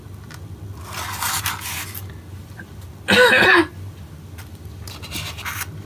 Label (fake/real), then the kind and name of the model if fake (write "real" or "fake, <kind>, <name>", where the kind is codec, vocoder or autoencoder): real